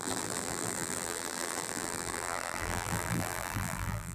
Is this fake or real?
fake